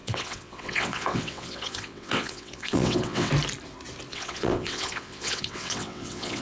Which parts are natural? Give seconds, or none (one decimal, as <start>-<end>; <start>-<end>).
3.3-4.1